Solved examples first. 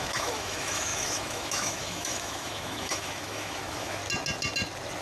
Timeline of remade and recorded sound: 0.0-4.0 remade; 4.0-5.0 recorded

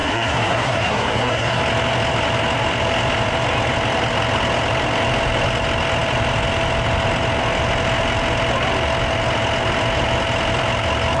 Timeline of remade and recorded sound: 0.0-1.6 remade; 1.6-11.2 recorded

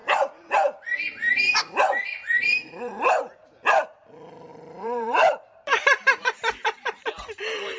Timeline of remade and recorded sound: 0.0-1.6 remade; 1.6-2.5 recorded; 2.5-3.2 remade; 3.2-4.5 recorded; 4.5-7.8 remade

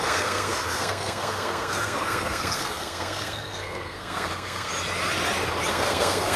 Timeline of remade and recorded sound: 0.0-4.7 remade; 4.7-5.7 recorded; 5.7-6.4 remade

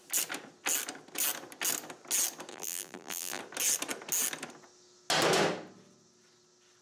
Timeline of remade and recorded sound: 0.0-2.5 recorded; 2.5-3.4 remade; 3.4-6.8 recorded

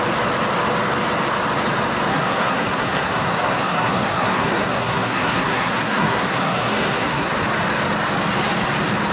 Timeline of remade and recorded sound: 0.0-2.1 recorded; 2.1-7.3 remade; 7.3-9.1 recorded

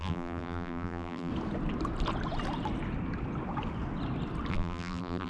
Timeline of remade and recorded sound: 0.0-1.3 remade; 1.3-4.5 recorded; 4.5-5.3 remade